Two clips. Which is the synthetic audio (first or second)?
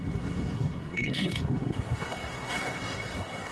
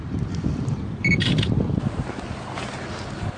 first